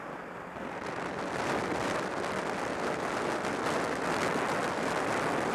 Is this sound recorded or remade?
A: recorded